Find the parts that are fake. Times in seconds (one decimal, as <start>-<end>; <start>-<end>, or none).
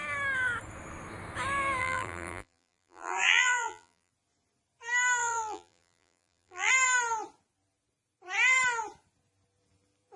1.8-4.1; 5.2-6.7